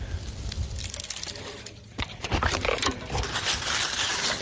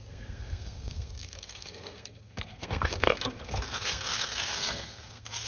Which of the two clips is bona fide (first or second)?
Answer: first